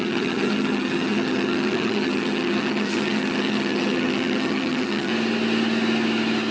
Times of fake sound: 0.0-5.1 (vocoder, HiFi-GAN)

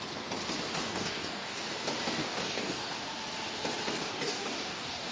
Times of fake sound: 0.9-1.6 (codec, DAC); 2.2-3.0; 4.0-5.1

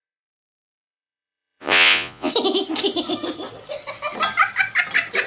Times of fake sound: 0.0-2.3 (vocoder, Vocos)

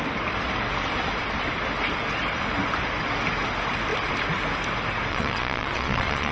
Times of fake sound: 5.1-6.3 (vocoder, Vocos)

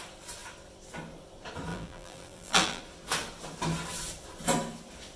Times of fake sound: 1.7-2.8 (vocoder, BigVGAN v2)

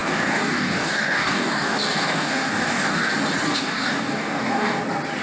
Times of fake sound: 0.0-3.1 (codec, DAC); 3.5-4.8

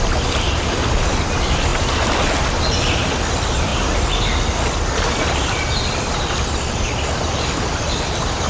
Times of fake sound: 0.0-1.7 (vocoder, BigVGAN v2); 3.3-8.5

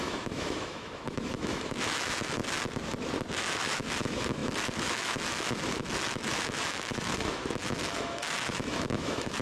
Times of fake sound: 0.0-2.4 (autoencoder, DAC-VAE); 3.4-9.4